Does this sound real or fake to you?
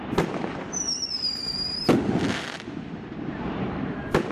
fake